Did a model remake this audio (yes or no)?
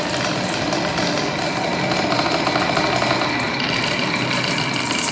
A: no